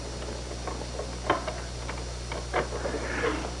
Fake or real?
real